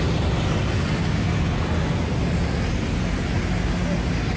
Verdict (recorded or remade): recorded